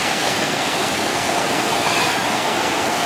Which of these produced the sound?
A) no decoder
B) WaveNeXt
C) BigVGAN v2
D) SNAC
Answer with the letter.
D